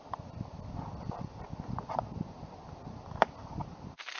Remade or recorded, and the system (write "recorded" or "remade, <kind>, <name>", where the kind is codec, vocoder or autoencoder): recorded